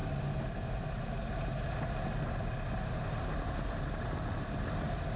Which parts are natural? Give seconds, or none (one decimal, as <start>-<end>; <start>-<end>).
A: 0.0-5.2

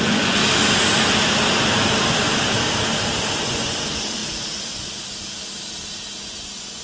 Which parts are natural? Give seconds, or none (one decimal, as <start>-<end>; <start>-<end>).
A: 0.4-3.4; 4.2-6.2

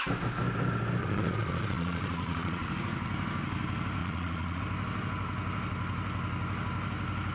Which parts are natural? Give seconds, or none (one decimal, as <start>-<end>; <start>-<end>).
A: 0.0-1.0; 2.7-4.0; 4.6-7.3

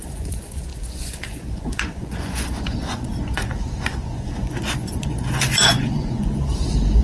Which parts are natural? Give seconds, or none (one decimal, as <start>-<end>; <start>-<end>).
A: none

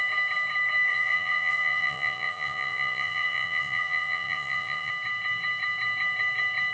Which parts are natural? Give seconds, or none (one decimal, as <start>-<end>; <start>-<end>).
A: 0.0-0.9; 4.9-6.7

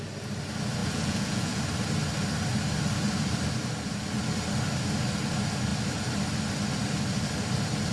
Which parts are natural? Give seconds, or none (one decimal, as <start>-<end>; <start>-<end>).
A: 0.0-0.8; 1.6-7.9

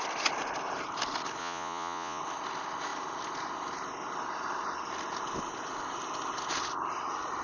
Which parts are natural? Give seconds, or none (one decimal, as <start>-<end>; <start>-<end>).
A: 0.0-1.4; 2.2-7.4

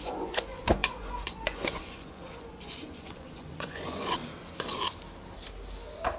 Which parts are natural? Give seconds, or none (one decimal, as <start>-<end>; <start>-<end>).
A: 4.2-6.2